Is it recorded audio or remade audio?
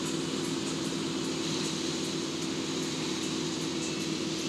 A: recorded